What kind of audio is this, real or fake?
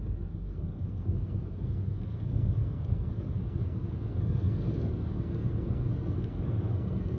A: fake